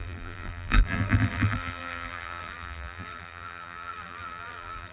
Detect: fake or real fake